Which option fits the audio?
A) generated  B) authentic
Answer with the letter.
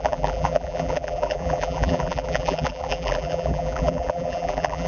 A